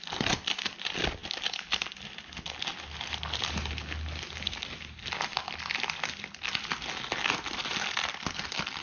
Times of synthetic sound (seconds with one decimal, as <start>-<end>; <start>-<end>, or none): none